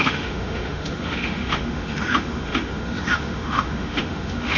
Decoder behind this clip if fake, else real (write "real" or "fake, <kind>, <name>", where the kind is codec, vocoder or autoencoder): fake, autoencoder, DAC-VAE